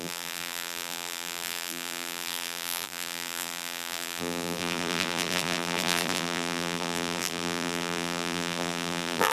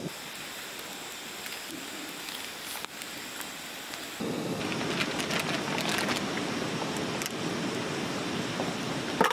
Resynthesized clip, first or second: first